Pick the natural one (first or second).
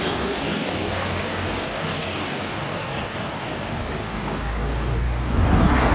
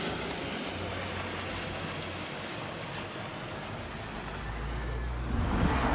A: second